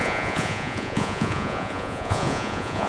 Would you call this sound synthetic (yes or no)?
yes